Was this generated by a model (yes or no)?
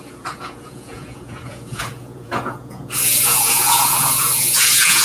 yes